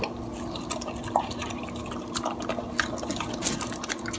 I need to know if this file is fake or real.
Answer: real